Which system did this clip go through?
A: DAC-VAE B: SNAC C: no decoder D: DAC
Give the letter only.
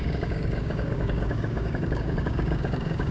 D